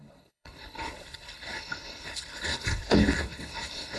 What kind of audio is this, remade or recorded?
remade